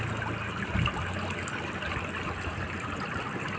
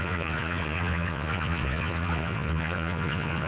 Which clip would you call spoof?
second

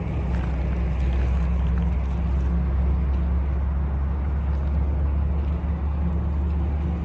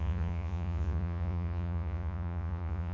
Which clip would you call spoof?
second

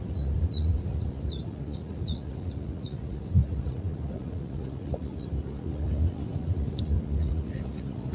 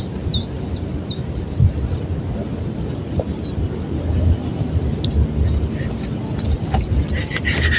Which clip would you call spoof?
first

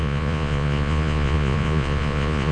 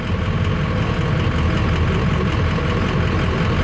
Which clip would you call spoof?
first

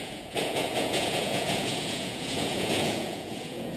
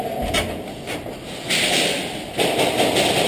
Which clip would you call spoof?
first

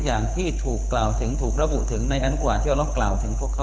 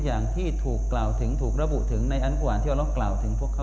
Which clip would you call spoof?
first